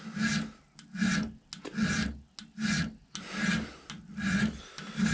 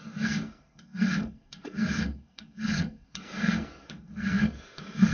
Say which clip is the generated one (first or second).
second